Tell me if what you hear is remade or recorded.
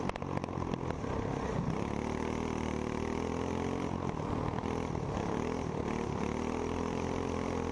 recorded